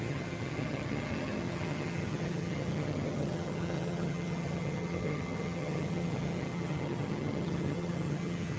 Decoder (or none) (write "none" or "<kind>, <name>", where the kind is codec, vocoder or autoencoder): vocoder, HiFi-GAN